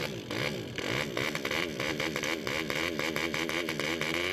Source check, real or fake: fake